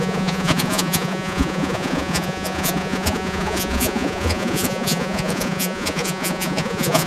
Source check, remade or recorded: remade